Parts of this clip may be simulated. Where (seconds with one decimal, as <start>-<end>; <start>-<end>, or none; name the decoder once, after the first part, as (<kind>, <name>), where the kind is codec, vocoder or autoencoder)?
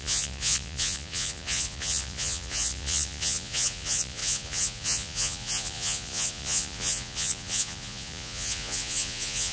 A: 0.0-9.5 (vocoder, Vocos)